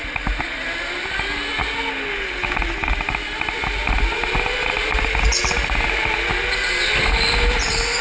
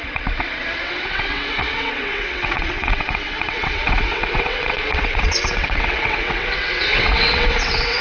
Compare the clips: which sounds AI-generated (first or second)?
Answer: second